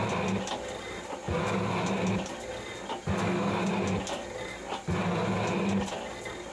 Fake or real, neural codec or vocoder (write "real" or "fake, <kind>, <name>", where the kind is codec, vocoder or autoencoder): real